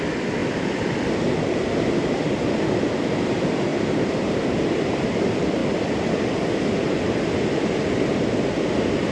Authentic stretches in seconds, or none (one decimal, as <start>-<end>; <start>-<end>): 0.0-0.4; 2.3-3.7; 4.8-9.1